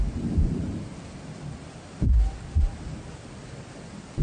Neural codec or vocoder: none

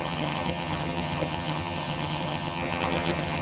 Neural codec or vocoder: vocoder, HiFi-GAN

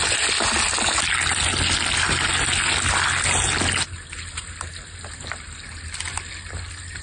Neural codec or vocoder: none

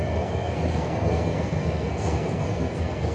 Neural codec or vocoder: codec, SNAC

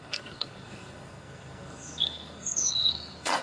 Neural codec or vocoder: codec, SNAC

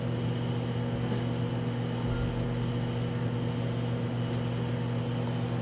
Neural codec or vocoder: none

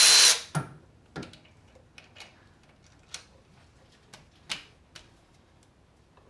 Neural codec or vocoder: none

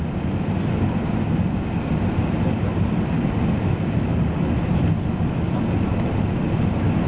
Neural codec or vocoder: none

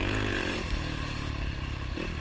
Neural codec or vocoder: vocoder, BigVGAN v2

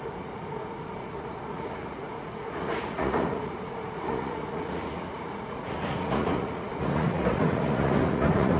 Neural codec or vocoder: vocoder, Vocos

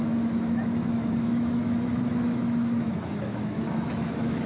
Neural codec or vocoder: autoencoder, DAC-VAE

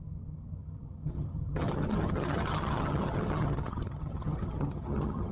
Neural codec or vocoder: vocoder, HiFi-GAN